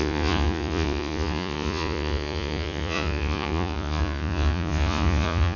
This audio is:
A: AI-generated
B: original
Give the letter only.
A